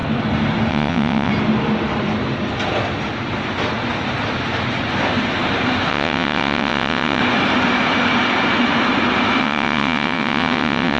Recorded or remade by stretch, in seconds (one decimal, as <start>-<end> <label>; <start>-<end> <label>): 0.0-0.7 recorded; 0.7-1.3 remade; 1.3-5.9 recorded; 5.9-7.2 remade; 7.2-9.4 recorded; 9.4-11.0 remade